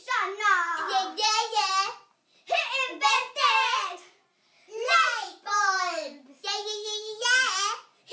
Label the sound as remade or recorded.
recorded